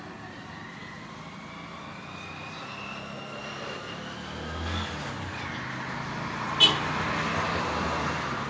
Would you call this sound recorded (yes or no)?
yes